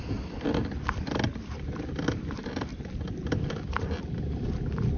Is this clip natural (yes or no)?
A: yes